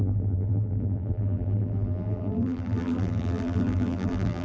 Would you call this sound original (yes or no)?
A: no